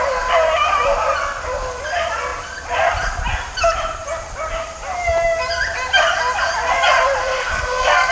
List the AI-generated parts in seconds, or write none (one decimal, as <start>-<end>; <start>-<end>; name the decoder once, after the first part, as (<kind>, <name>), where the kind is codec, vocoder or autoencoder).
7.2-8.1 (codec, SNAC)